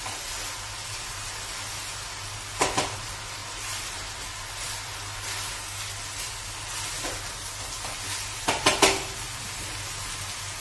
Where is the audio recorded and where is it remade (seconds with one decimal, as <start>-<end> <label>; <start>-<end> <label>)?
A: 0.0-3.4 recorded; 3.4-4.3 remade; 4.3-10.6 recorded